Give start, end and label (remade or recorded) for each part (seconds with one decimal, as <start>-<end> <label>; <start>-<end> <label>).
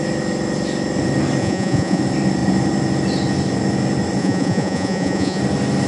0.0-1.4 recorded; 1.4-2.0 remade; 2.0-4.2 recorded; 4.2-5.4 remade; 5.4-5.9 recorded